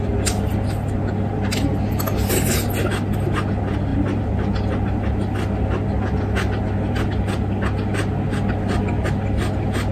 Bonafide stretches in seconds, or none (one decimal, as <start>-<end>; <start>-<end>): 0.0-9.9